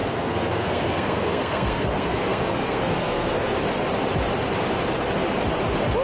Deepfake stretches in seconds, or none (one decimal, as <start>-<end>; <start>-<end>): 0.0-3.6